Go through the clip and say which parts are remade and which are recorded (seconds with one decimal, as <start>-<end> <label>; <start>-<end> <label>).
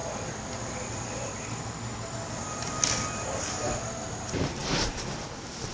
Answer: 0.0-5.7 recorded